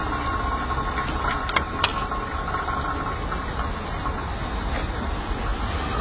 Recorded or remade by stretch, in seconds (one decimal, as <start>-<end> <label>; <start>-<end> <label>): 0.0-6.0 recorded